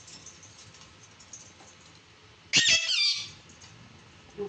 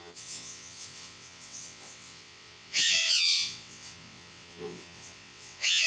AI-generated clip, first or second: second